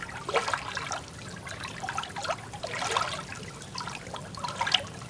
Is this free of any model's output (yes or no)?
yes